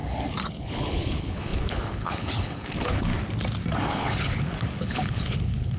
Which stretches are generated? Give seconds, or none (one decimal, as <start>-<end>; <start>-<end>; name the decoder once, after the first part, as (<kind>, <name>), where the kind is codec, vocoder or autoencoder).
0.5-3.1 (codec, HILCodec); 3.9-5.8